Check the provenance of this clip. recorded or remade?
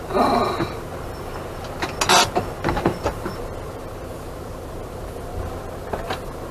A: recorded